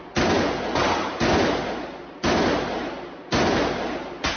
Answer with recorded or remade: recorded